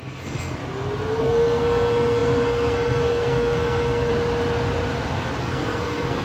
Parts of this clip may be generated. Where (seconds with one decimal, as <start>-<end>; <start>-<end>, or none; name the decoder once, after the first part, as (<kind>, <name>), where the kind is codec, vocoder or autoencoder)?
0.0-0.6 (codec, SNAC); 1.2-4.1; 5.4-6.2